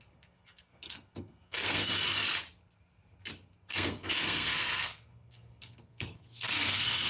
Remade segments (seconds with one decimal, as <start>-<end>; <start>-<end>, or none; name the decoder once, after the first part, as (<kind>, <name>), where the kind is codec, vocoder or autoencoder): 0.0-1.9 (codec, SNAC); 3.7-7.1